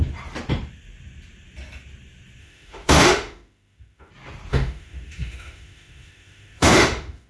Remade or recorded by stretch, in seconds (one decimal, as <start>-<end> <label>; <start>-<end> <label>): 0.0-2.4 recorded; 2.4-4.1 remade; 4.1-4.5 recorded; 4.5-7.3 remade